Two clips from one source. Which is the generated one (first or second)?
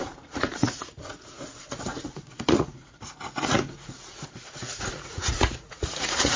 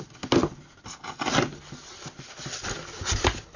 first